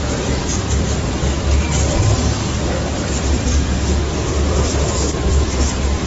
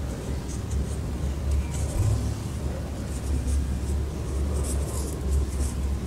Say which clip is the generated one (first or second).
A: first